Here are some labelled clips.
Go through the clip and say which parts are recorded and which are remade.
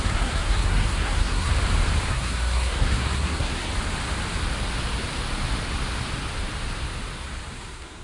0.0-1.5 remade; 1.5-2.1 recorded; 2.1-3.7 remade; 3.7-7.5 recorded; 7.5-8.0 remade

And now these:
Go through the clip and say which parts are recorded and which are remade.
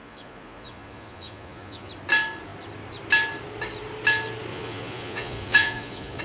0.0-1.9 remade; 1.9-4.5 recorded; 4.5-6.2 remade